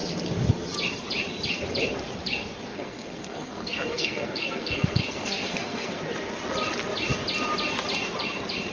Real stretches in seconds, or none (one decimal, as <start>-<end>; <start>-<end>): 0.0-2.7; 6.0-8.7